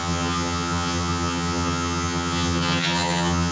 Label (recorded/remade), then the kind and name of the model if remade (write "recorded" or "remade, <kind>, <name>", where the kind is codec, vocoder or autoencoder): remade, vocoder, HiFi-GAN